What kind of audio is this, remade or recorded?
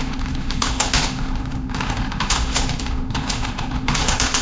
remade